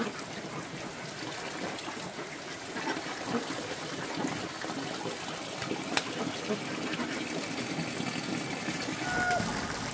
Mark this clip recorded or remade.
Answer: recorded